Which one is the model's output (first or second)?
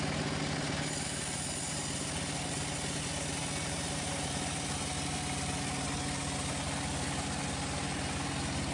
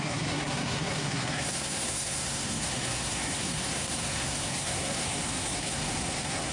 second